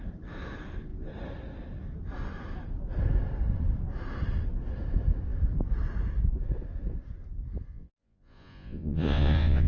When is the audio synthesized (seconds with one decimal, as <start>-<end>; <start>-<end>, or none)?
7.7-9.7